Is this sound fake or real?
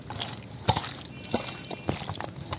real